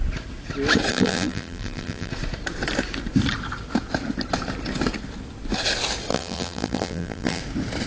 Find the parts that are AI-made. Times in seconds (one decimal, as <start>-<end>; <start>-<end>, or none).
0.9-2.1; 6.1-7.4